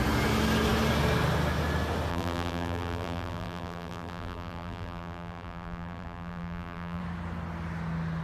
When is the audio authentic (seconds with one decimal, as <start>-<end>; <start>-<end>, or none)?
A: 0.0-2.1; 7.0-8.2